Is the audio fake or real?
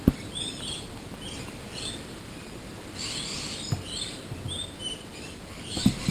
real